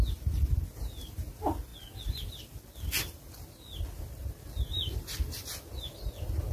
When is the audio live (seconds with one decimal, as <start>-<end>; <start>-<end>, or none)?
0.0-6.5